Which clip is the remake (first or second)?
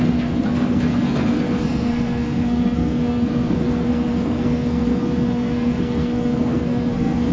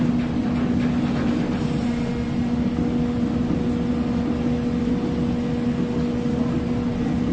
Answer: first